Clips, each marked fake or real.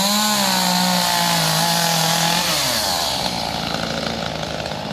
real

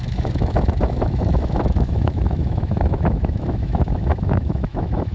fake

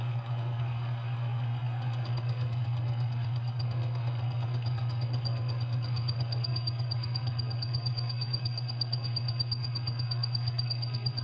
fake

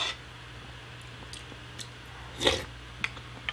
real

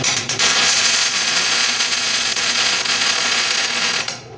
fake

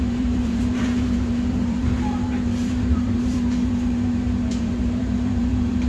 fake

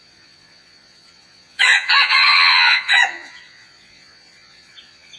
fake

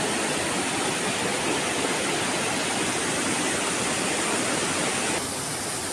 real